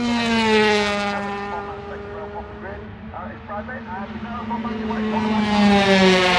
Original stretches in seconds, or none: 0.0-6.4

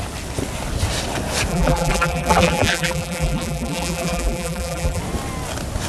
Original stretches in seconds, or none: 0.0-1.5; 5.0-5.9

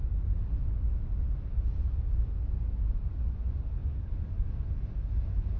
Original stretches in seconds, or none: 0.0-5.6

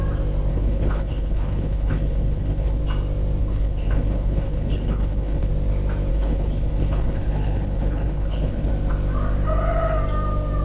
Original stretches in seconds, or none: 0.0-0.5; 2.8-3.4; 5.5-6.1; 8.7-10.6

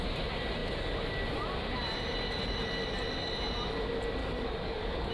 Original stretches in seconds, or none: 0.0-4.2

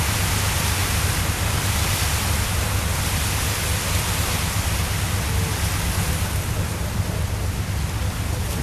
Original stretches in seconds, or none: 0.0-8.6

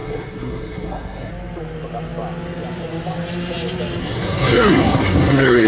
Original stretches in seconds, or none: 1.3-4.0